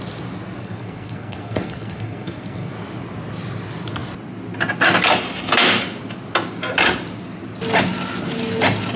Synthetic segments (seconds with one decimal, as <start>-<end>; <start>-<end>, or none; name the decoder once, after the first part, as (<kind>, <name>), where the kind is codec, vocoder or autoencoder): 0.6-2.7 (codec, SNAC)